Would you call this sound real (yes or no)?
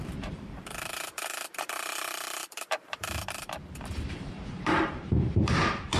no